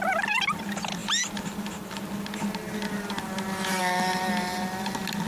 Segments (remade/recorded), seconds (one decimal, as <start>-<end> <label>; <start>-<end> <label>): 0.0-5.3 recorded